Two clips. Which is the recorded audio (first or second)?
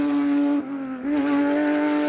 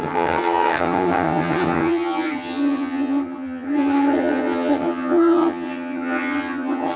first